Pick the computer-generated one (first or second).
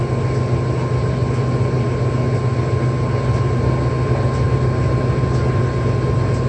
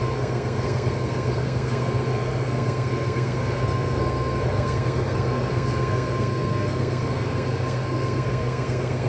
second